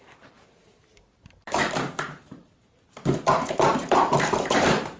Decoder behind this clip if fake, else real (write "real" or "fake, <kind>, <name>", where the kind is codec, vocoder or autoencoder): fake, vocoder, BigVGAN v2